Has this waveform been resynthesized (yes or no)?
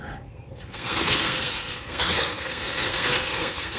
yes